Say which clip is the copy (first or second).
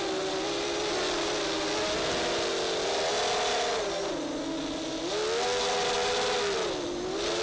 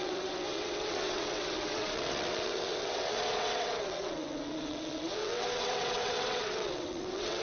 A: second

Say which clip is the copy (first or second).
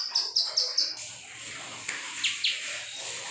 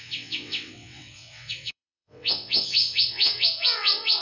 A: second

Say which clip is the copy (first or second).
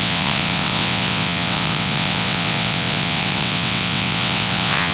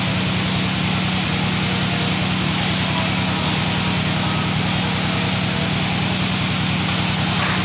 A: first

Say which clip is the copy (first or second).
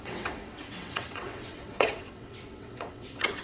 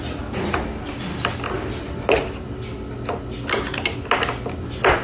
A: first